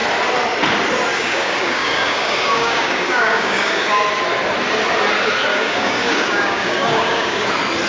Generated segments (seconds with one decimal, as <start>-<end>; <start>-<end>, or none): 1.1-4.0; 5.5-7.5